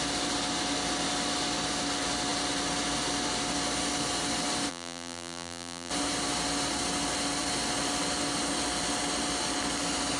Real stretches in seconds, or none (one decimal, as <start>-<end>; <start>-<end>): 0.0-4.7; 5.9-10.2